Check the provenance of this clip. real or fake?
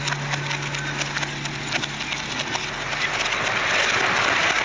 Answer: real